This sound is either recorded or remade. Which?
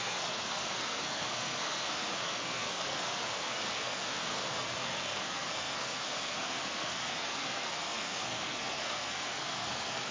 remade